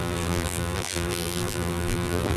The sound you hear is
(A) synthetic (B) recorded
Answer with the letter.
A